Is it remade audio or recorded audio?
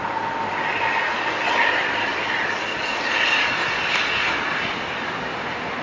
recorded